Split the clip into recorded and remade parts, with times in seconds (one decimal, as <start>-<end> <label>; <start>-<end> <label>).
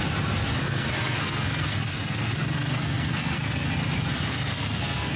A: 0.0-0.6 recorded; 0.6-3.7 remade; 3.7-4.3 recorded; 4.3-5.2 remade